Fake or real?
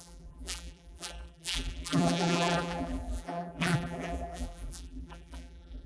fake